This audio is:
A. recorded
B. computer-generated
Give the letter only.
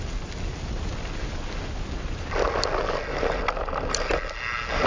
A